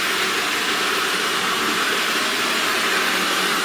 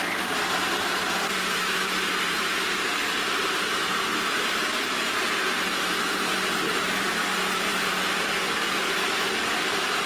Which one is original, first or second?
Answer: first